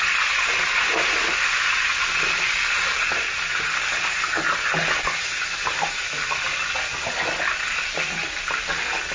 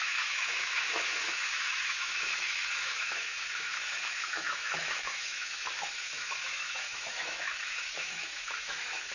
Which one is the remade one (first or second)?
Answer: second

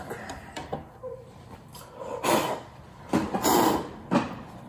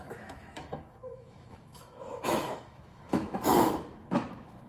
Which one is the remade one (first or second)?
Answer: second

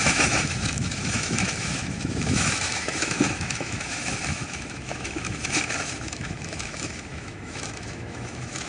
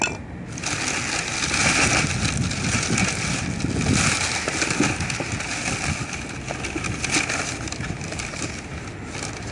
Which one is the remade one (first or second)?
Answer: first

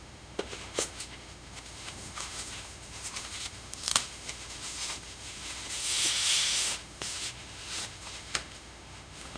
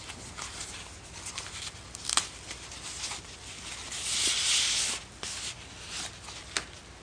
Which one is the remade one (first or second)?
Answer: first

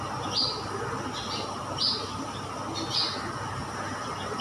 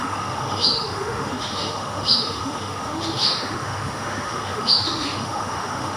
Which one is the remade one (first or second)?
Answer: second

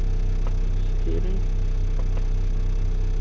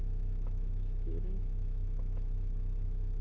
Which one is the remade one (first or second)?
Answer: second